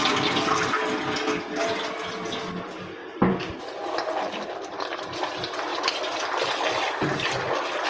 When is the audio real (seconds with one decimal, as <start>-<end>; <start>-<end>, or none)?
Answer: 0.0-2.6